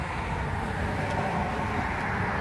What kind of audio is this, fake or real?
real